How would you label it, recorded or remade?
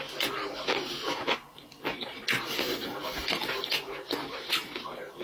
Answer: recorded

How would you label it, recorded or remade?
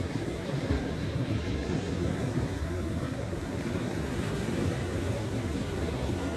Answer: remade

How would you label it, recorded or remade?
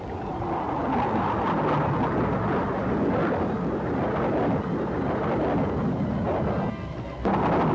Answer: recorded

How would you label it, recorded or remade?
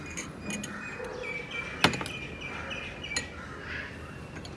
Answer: recorded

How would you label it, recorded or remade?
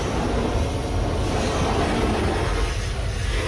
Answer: recorded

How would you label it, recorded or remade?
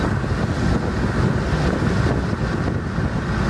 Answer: recorded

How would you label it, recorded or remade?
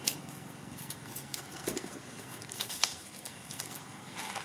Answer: remade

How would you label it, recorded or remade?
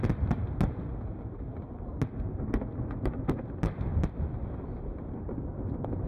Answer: recorded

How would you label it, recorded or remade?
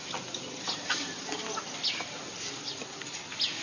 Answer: recorded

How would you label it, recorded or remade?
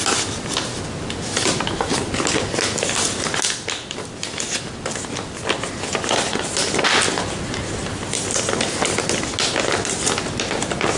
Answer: recorded